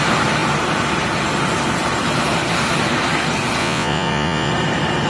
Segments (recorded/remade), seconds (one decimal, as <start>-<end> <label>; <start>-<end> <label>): 0.0-3.6 recorded; 3.6-4.5 remade; 4.5-5.1 recorded